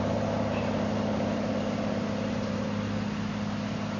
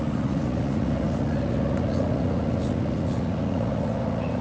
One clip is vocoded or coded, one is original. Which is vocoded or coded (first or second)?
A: second